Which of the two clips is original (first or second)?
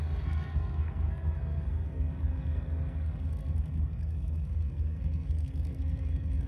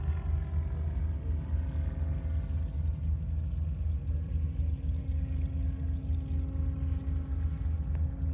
second